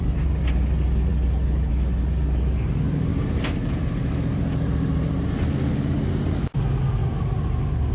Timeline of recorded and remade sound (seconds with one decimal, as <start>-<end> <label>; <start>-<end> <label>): 0.0-3.1 recorded; 3.1-6.6 remade; 6.6-7.9 recorded